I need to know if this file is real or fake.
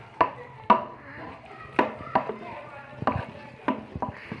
real